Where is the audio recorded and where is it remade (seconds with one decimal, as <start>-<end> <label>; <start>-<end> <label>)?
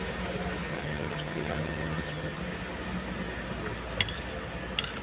0.0-0.7 recorded; 0.7-2.4 remade; 2.4-5.0 recorded